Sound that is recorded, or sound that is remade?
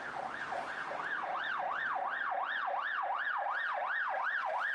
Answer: recorded